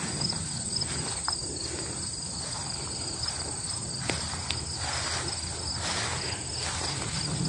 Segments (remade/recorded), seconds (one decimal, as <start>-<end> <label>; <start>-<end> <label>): 0.0-7.5 recorded